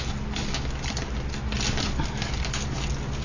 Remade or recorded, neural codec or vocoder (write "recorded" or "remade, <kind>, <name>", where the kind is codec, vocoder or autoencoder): recorded